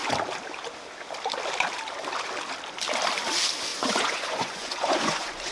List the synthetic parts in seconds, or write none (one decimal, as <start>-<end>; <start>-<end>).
3.7-5.5